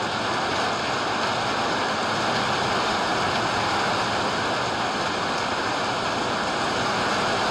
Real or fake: real